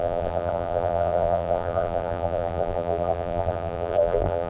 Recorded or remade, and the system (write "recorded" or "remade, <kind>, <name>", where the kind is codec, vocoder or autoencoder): remade, vocoder, BigVGAN v2